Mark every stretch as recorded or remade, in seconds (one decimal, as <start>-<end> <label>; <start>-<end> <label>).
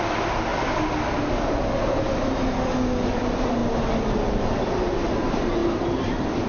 0.0-6.5 recorded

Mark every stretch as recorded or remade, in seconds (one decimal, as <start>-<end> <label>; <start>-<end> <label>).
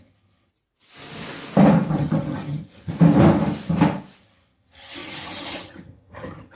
0.0-0.5 remade; 0.5-1.9 recorded; 1.9-2.9 remade; 2.9-4.2 recorded; 4.2-6.6 remade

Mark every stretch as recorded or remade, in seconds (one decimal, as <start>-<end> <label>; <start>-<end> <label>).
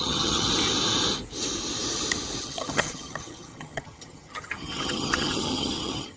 0.0-0.5 remade; 0.5-2.4 recorded; 2.4-6.2 remade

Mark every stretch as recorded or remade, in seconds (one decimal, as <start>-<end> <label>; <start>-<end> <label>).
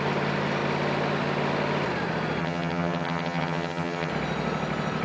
0.0-2.4 recorded; 2.4-4.1 remade; 4.1-5.0 recorded